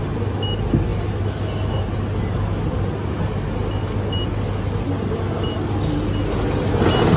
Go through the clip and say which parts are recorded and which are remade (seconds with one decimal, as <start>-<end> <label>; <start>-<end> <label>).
0.0-7.2 recorded